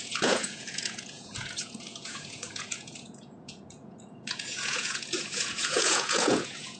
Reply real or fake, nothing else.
fake